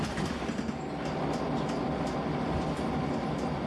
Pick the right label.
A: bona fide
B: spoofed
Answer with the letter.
A